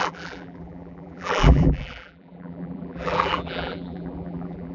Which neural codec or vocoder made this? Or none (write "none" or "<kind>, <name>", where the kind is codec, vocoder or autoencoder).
vocoder, BigVGAN v2